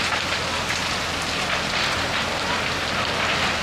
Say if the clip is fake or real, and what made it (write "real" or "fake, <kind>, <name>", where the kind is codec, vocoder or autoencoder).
real